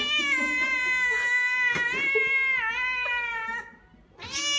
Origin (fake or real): real